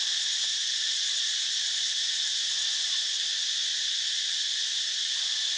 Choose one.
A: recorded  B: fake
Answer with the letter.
A